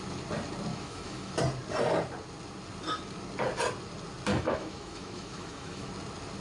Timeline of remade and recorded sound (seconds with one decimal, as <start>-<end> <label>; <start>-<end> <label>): 0.0-0.7 recorded; 0.7-1.3 remade; 1.3-4.3 recorded; 4.3-5.9 remade; 5.9-6.4 recorded